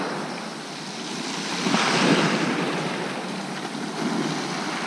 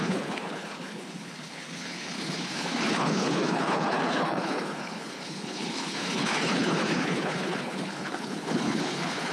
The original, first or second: first